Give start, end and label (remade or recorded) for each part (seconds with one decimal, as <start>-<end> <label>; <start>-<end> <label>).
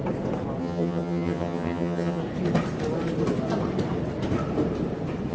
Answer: 0.0-0.6 recorded; 0.6-2.2 remade; 2.2-5.3 recorded